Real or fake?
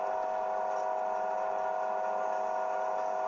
real